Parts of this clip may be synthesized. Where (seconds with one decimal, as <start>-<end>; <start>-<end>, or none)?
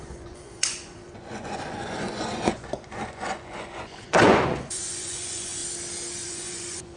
0.0-5.6; 6.2-7.0